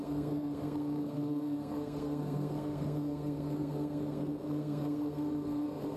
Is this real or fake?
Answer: fake